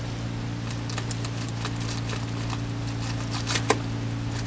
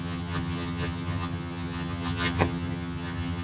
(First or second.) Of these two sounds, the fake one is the second